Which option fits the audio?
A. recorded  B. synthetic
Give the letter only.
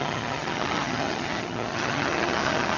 B